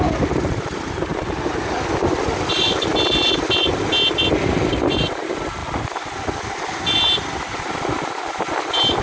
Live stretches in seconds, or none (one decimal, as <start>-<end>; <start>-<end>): 0.0-9.0